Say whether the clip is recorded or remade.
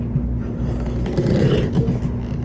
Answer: recorded